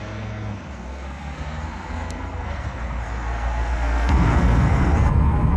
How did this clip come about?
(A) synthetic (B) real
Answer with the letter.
A